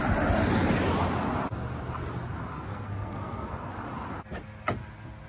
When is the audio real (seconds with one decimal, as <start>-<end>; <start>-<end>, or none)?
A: 0.0-2.5; 3.7-5.3